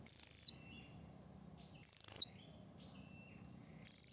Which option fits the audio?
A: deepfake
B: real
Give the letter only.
B